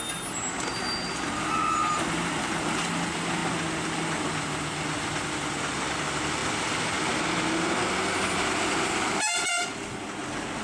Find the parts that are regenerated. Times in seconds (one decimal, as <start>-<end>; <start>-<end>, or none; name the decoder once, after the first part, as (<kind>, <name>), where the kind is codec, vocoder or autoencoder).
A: 1.1-2.9 (vocoder, BigVGAN v2)